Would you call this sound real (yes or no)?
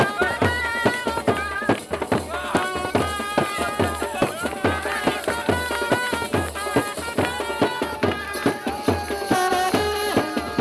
yes